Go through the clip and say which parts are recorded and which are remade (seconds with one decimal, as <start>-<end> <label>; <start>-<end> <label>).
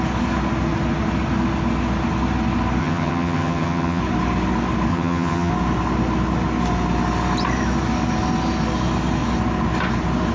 0.0-2.8 recorded; 2.8-4.0 remade; 4.0-4.9 recorded; 4.9-5.5 remade; 5.5-10.3 recorded